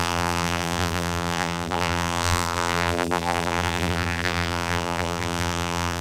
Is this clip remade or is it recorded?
remade